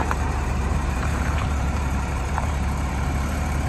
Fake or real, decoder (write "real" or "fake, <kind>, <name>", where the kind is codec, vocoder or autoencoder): fake, vocoder, BigVGAN v2